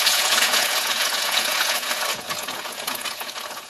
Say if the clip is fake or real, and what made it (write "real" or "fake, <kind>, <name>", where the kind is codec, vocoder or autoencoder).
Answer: fake, vocoder, Vocos